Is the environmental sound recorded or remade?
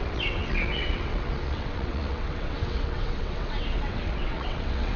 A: remade